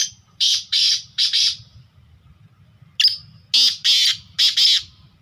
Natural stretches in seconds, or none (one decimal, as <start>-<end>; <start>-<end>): 2.2-5.2

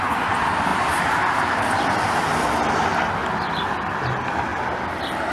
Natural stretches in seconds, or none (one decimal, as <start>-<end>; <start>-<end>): 0.0-0.7; 2.0-5.3

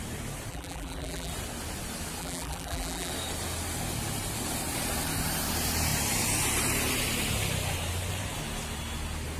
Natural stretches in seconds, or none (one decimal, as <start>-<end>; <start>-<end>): 0.0-0.5; 1.3-2.2; 3.1-9.4

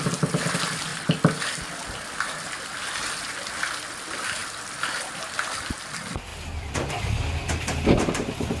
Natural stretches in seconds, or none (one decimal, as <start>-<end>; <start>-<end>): 0.0-8.6

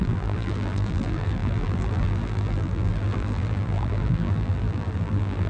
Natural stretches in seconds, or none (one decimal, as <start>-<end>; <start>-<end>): none

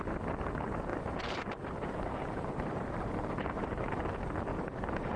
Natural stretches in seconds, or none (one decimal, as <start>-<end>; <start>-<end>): 0.0-0.9; 4.0-4.5

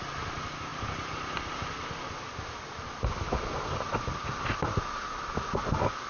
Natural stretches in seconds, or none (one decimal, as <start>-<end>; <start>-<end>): 0.0-6.1

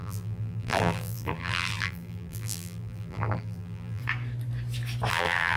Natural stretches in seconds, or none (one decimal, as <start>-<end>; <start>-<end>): 4.0-5.1